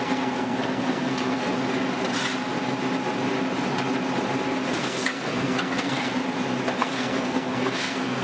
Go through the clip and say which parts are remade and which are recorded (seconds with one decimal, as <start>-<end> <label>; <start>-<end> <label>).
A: 0.0-1.5 remade; 1.5-4.8 recorded; 4.8-6.2 remade; 6.2-6.8 recorded; 6.8-8.2 remade